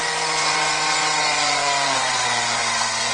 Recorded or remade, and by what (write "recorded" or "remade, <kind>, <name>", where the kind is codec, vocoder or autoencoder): remade, vocoder, Vocos